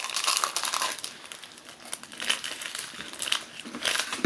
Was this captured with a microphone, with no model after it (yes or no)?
yes